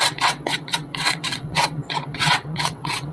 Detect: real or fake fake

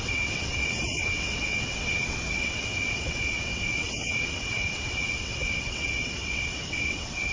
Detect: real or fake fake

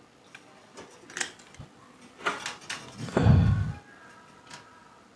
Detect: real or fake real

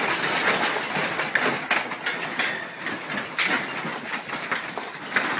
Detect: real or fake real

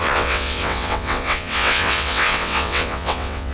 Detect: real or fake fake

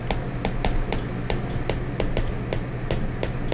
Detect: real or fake real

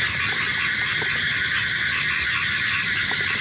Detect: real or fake real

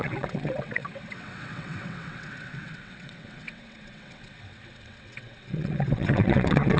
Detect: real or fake fake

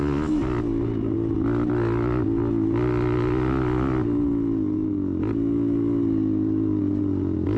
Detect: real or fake real